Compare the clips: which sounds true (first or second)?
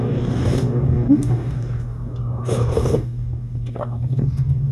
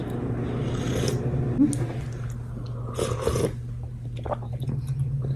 second